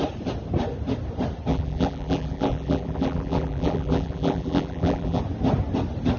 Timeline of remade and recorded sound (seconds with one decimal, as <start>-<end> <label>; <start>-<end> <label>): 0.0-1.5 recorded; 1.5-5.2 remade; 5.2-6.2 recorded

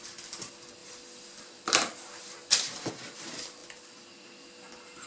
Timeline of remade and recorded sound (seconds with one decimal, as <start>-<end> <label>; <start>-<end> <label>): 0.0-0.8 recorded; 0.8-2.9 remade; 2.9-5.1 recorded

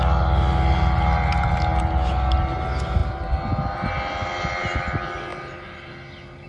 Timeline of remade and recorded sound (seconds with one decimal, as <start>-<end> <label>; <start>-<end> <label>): 0.0-5.3 recorded; 5.3-5.9 remade; 5.9-6.5 recorded

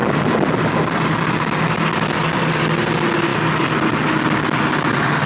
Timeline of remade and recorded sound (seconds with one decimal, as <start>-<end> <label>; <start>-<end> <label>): 0.0-5.3 recorded